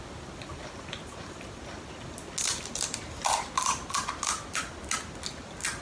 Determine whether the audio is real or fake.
real